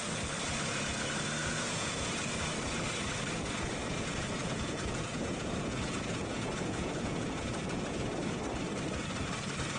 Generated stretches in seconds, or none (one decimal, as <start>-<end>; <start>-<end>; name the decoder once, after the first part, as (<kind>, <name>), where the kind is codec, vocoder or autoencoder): 1.4-2.1 (vocoder, Vocos); 3.8-8.4